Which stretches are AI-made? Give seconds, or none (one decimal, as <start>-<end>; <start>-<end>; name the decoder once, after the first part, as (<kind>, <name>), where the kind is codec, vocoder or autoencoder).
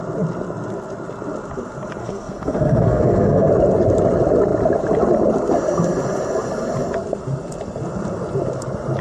2.0-3.5 (codec, SNAC)